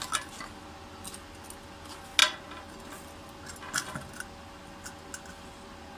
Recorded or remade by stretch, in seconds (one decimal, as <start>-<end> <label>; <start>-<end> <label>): 0.0-6.0 recorded